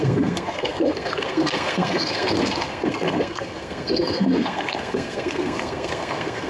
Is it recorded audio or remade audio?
remade